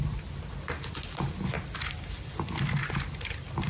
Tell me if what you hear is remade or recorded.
recorded